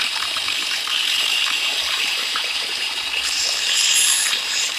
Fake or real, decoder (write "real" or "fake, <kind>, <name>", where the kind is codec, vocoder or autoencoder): fake, vocoder, BigVGAN v2